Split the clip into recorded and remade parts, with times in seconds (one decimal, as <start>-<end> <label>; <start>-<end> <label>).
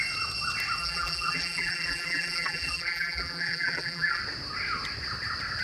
0.0-0.8 recorded; 0.8-4.2 remade; 4.2-5.6 recorded